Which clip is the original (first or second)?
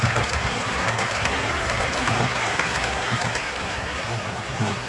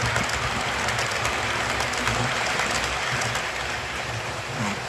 second